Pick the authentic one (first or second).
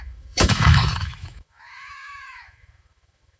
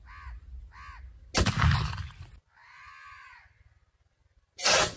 second